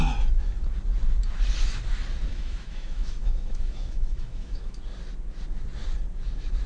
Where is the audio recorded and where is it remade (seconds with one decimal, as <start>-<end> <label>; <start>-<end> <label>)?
0.0-2.3 recorded; 2.3-4.8 remade; 4.8-6.7 recorded